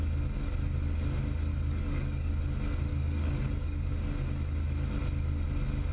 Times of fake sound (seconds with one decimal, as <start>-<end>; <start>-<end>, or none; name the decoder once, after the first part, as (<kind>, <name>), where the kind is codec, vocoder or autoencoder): 1.5-2.3 (codec, DAC); 2.9-3.9